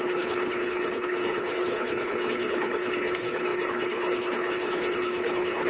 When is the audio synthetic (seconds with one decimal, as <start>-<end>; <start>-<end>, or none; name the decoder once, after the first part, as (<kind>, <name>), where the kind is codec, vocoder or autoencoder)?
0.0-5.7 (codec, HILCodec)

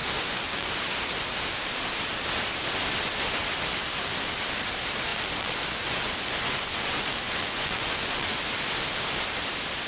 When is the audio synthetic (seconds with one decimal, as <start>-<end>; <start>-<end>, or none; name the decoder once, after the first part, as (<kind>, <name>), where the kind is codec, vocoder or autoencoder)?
0.0-0.7 (vocoder, Vocos); 5.1-8.3

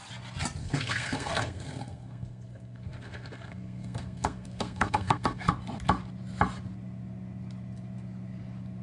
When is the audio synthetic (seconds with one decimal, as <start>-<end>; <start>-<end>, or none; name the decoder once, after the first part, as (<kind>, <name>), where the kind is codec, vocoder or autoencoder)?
0.6-5.5 (codec, SNAC)

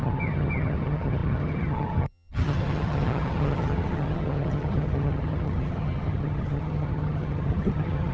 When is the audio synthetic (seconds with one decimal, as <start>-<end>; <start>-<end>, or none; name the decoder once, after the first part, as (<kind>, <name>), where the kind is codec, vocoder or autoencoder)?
0.0-8.1 (vocoder, HiFi-GAN)